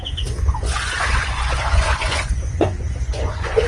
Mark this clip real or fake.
fake